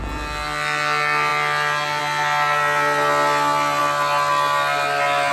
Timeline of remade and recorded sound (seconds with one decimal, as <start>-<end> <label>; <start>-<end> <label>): 0.0-5.3 recorded